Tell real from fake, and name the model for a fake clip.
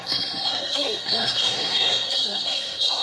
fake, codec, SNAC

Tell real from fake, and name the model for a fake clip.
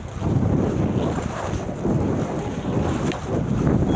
real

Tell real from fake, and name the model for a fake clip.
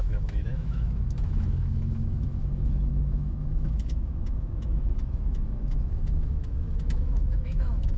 fake, autoencoder, DAC-VAE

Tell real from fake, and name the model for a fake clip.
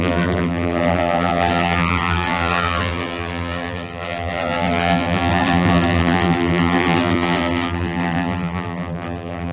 fake, vocoder, BigVGAN v2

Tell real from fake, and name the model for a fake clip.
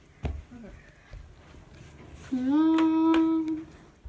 real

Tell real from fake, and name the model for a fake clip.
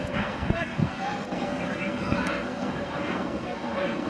fake, codec, SNAC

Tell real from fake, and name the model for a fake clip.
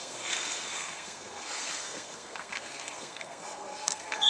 fake, codec, SNAC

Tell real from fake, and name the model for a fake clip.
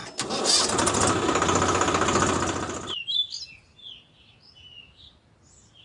real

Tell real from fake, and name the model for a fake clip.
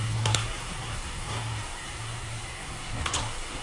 fake, codec, SNAC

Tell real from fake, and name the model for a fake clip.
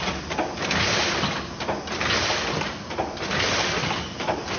real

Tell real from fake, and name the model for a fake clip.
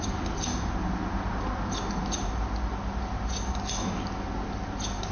real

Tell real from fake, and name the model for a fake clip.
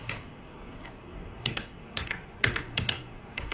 fake, codec, SNAC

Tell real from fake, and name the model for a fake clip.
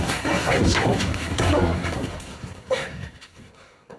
fake, codec, SNAC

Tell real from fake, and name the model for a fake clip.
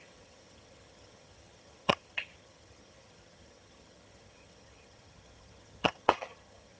fake, vocoder, HiFi-GAN